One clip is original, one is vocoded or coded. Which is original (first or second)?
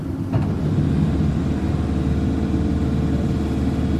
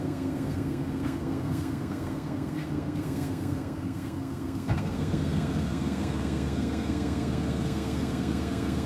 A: first